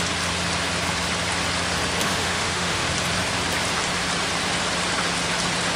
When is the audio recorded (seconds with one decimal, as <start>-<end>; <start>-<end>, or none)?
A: 0.0-2.0; 2.9-5.8